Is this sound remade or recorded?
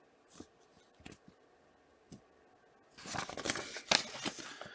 recorded